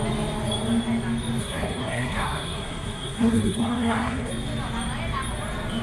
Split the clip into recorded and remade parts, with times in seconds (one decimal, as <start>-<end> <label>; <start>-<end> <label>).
0.0-1.4 recorded; 1.4-4.3 remade; 4.3-5.8 recorded